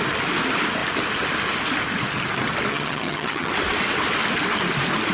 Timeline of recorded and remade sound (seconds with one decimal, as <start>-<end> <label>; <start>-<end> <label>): 0.0-2.7 recorded; 2.7-3.5 remade; 3.5-5.1 recorded